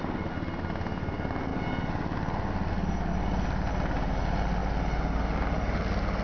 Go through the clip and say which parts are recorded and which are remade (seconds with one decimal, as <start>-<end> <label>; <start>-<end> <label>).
0.0-6.2 recorded